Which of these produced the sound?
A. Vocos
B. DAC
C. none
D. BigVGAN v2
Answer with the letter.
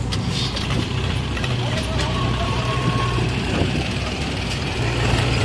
D